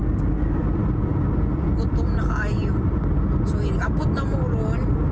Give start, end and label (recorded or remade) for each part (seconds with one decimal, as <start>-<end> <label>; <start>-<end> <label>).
0.0-5.1 recorded